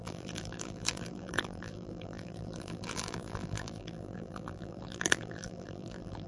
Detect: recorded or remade remade